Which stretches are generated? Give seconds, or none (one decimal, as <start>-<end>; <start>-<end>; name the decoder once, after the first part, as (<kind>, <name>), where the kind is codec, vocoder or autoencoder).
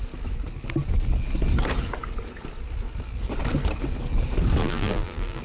4.6-5.4 (vocoder, BigVGAN v2)